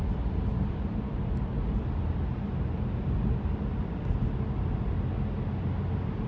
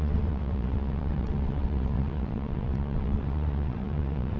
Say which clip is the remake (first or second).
second